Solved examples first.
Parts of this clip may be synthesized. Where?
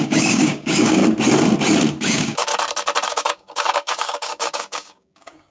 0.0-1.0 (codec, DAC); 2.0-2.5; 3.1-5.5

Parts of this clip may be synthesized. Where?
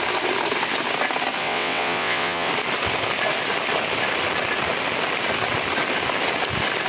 1.4-2.5 (vocoder, WaveNeXt)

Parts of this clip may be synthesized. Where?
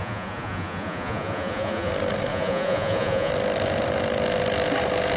0.0-1.9 (vocoder, Vocos); 2.3-3.3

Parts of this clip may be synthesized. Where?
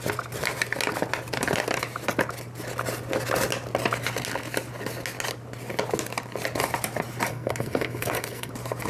7.3-8.5 (codec, SNAC)